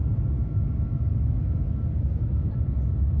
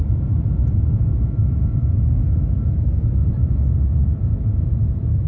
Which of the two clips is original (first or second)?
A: first